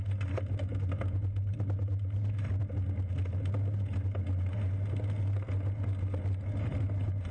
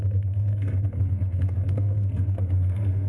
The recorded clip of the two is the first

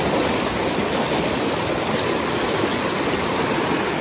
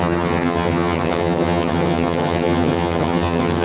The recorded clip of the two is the first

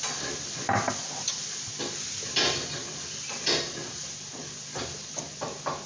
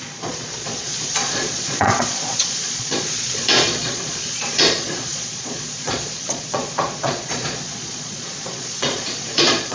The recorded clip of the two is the first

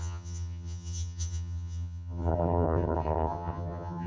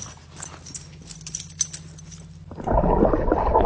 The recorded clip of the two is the second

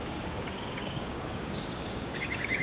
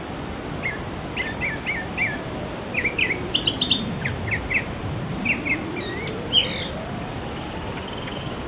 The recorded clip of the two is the second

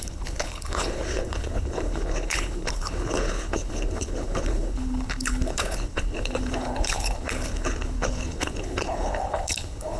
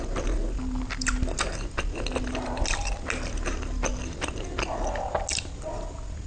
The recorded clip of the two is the second